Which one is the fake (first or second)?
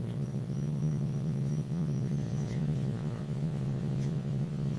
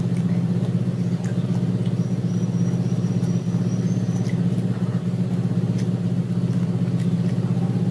first